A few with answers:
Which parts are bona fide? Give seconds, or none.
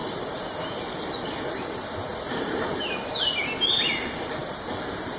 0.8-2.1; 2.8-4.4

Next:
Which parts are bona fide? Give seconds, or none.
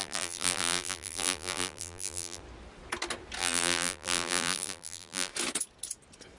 2.4-3.4; 5.3-6.4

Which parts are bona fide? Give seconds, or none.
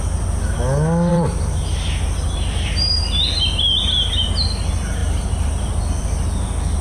0.0-1.1; 1.7-5.0; 5.8-6.8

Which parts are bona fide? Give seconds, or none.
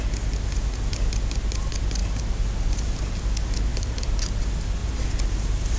0.0-2.0; 3.2-3.7; 4.2-4.8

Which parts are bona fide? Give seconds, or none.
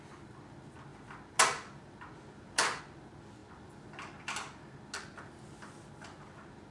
0.0-6.7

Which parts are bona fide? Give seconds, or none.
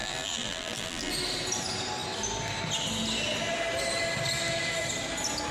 1.1-5.5